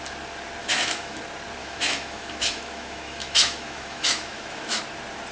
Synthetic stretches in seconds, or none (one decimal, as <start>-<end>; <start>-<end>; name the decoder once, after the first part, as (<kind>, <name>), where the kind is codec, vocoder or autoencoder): 0.6-1.2 (autoencoder, DAC-VAE); 1.6-4.8